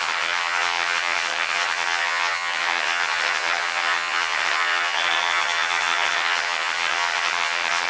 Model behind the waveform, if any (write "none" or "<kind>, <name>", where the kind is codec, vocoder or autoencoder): vocoder, HiFi-GAN